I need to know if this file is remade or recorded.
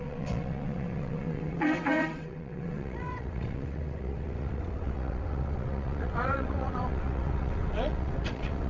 remade